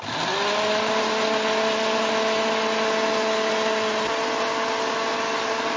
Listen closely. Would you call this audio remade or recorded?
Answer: recorded